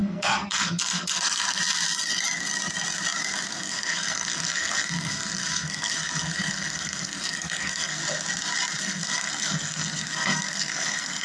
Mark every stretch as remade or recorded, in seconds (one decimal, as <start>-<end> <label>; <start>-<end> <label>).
0.0-1.6 remade; 1.6-3.6 recorded; 3.6-8.0 remade; 8.0-8.8 recorded; 8.8-11.2 remade